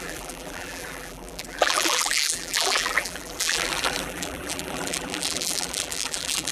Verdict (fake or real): fake